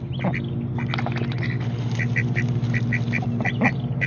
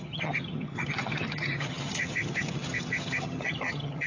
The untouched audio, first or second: first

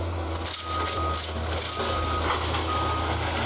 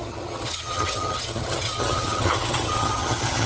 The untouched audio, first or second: first